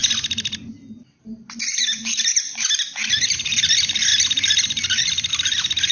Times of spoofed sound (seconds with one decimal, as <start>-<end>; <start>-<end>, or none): none